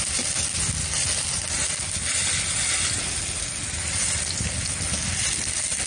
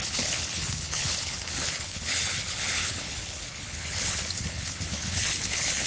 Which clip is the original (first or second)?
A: first